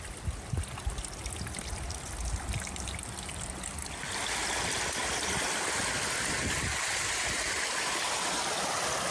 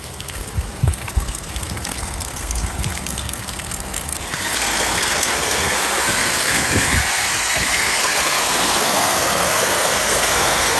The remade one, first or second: second